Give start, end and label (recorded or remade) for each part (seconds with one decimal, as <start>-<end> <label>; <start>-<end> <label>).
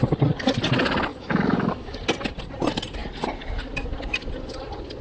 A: 0.0-1.1 recorded; 1.1-2.0 remade; 2.0-5.0 recorded